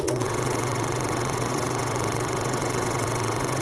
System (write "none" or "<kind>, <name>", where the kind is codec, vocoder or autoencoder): vocoder, WaveNeXt